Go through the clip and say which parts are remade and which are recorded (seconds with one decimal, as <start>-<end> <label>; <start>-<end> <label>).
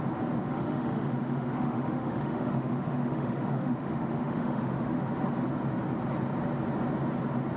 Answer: 0.0-0.4 recorded; 0.4-5.0 remade; 5.0-7.6 recorded